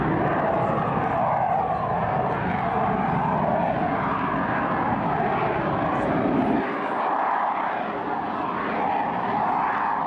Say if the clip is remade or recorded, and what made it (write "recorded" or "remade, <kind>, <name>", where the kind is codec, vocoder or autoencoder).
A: recorded